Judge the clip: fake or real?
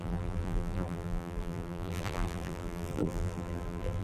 fake